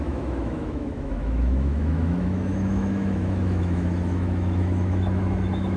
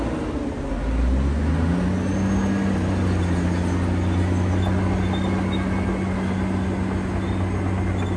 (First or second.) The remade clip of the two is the first